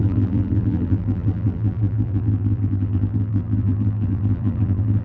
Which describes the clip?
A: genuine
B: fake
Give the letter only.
B